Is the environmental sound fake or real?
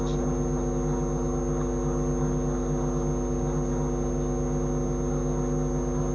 real